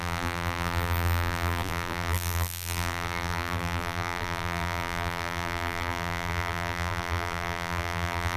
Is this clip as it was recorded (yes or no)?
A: no